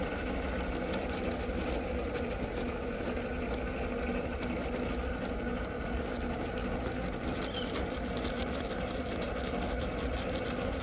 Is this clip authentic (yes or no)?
yes